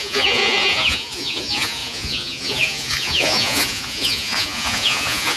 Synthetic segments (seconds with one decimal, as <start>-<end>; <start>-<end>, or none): 0.0-5.4